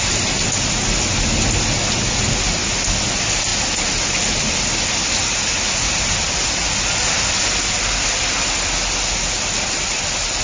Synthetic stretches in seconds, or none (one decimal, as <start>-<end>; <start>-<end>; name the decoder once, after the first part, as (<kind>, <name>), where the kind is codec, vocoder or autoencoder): none